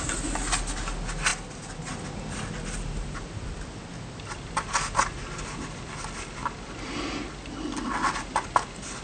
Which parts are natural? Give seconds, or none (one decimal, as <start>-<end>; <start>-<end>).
0.0-9.0